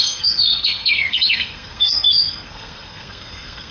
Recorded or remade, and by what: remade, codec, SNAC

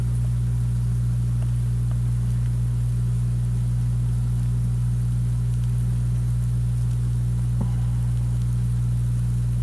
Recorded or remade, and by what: recorded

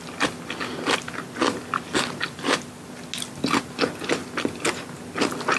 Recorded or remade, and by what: recorded